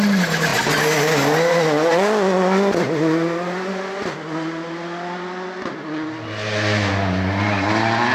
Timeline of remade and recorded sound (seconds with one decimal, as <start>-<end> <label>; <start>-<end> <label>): 0.0-8.1 recorded